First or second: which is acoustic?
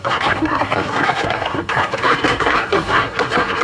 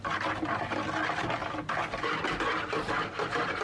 second